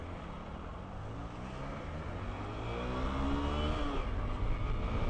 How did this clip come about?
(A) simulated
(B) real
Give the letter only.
B